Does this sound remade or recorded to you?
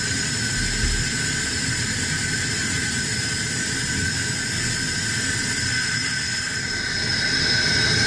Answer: recorded